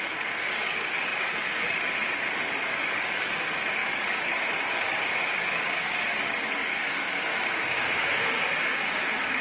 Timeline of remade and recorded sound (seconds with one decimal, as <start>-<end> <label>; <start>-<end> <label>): 0.0-9.4 remade